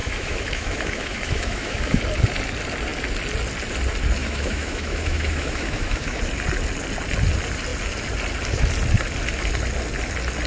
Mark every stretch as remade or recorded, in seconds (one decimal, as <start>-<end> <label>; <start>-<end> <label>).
0.0-2.0 remade; 2.0-4.2 recorded; 4.2-6.2 remade; 6.2-10.5 recorded